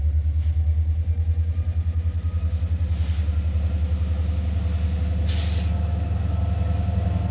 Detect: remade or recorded recorded